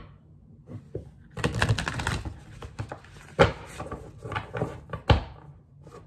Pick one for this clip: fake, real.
real